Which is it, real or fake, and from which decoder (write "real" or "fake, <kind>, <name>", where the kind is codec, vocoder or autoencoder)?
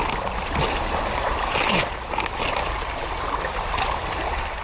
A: real